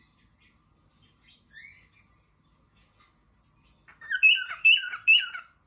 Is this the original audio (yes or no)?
yes